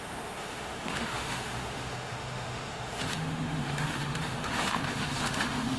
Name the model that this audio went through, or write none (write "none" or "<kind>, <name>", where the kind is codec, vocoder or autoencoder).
autoencoder, DAC-VAE